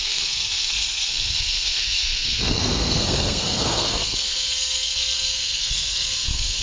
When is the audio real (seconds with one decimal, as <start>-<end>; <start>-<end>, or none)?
none